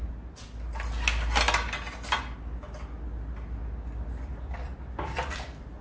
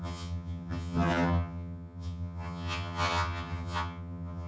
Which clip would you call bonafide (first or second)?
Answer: first